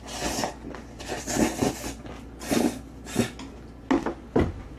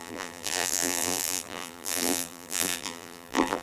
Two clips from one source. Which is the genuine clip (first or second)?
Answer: first